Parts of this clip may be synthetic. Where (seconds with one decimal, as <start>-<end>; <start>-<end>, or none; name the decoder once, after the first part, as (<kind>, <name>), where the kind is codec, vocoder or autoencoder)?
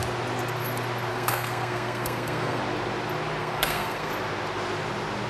1.1-2.6 (codec, SNAC); 3.4-4.1